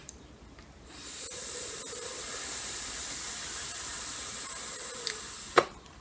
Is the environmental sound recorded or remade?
remade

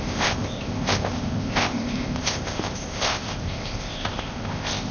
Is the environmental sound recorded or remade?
remade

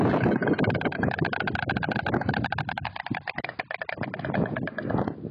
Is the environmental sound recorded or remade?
recorded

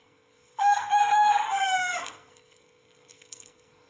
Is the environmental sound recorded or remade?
remade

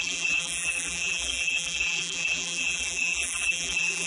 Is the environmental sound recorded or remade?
remade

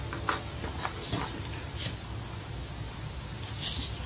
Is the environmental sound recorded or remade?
recorded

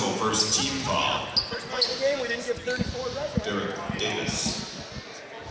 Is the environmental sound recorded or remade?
recorded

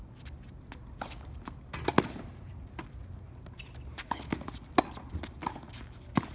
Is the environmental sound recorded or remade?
recorded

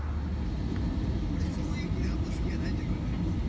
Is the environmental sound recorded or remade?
recorded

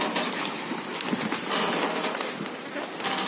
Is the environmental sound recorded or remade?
recorded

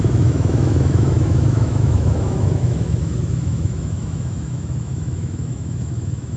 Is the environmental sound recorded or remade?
remade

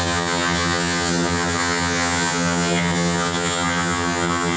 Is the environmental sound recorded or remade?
remade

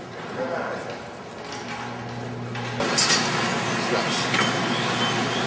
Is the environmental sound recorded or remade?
recorded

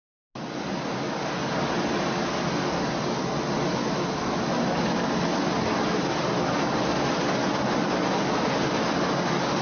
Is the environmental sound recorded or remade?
recorded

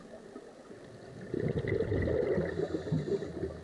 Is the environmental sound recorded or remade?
recorded